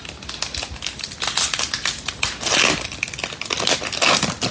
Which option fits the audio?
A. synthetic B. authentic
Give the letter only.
B